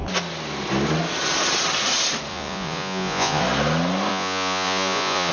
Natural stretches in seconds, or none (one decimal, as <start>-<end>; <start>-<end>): 0.0-2.3; 3.4-4.1